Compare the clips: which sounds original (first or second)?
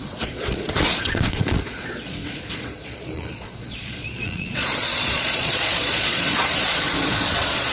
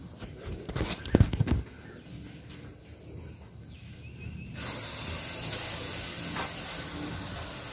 second